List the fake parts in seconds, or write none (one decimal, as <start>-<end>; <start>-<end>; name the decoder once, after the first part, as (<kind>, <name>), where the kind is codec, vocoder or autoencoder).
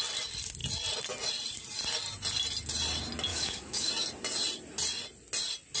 3.3-3.9 (autoencoder, DAC-VAE)